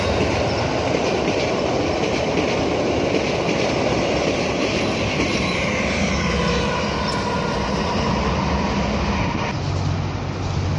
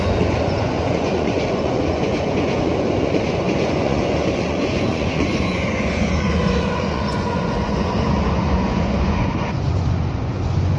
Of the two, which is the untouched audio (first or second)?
first